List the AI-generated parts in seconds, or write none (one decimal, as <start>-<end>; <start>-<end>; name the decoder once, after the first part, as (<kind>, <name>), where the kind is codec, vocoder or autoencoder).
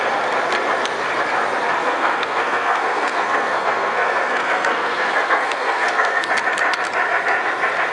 1.8-6.3 (codec, SNAC)